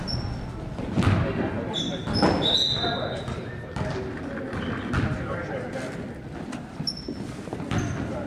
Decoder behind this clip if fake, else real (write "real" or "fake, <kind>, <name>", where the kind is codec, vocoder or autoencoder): real